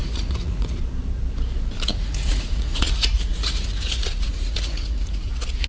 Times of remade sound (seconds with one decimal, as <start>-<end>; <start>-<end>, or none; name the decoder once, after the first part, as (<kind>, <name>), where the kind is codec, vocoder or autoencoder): 0.0-0.8 (vocoder, Vocos); 1.9-5.3